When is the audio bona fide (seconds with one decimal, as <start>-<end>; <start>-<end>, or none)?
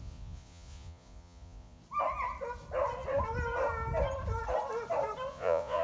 1.8-5.3